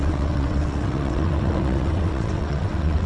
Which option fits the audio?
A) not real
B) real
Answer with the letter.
A